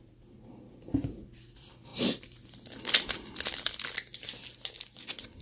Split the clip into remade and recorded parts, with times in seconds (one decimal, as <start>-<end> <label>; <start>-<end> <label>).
0.0-5.4 recorded